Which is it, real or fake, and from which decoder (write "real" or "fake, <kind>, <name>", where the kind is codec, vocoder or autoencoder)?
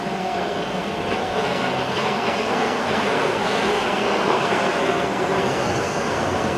fake, codec, SNAC